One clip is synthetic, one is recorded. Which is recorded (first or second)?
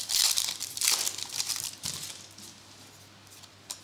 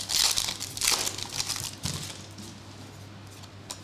second